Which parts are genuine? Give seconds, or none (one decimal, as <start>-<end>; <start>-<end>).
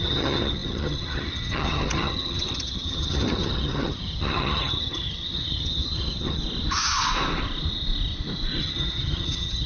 6.4-8.6